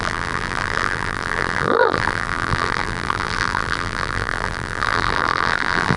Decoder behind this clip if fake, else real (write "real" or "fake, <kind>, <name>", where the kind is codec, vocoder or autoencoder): fake, vocoder, BigVGAN v2